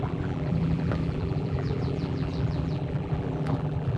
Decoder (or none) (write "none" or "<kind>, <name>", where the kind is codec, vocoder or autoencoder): vocoder, BigVGAN v2